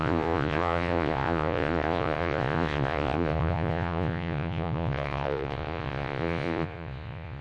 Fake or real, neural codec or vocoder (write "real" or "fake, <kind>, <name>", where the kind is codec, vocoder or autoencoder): fake, vocoder, Vocos